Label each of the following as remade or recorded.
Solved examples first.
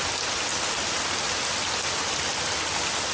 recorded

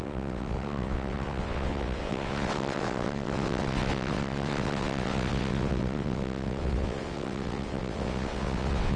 remade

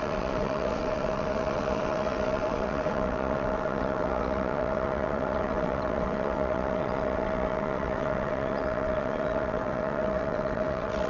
remade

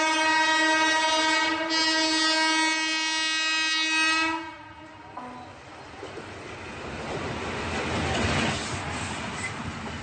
recorded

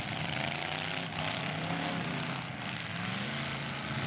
recorded